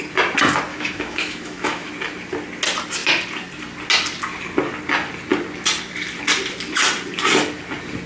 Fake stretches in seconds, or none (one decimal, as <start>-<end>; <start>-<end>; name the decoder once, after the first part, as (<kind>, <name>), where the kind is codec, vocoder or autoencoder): 0.7-1.9 (autoencoder, DAC-VAE)